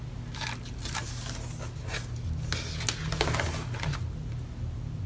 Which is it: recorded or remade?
recorded